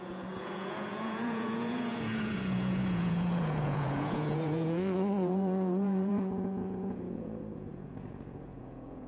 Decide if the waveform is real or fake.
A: fake